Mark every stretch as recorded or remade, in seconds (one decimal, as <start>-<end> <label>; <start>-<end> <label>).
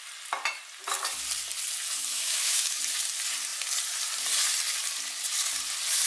0.0-2.1 recorded; 2.1-2.8 remade; 2.8-6.1 recorded